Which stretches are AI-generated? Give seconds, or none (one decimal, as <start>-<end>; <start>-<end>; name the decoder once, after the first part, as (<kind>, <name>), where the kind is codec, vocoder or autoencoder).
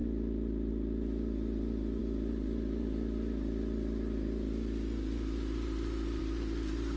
none